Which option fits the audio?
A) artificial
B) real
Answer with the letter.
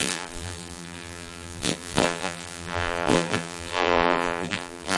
A